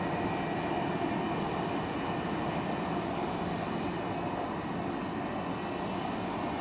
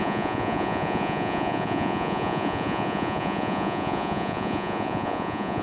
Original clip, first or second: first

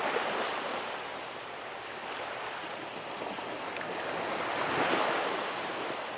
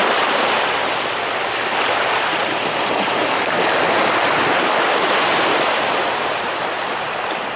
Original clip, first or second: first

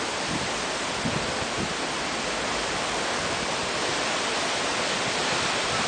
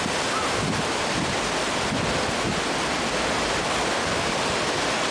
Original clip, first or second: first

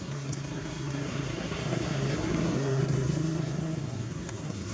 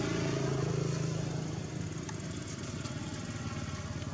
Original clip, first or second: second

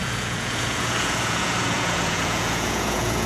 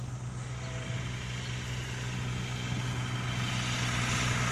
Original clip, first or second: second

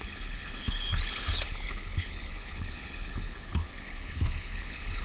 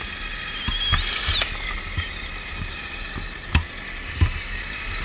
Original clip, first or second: second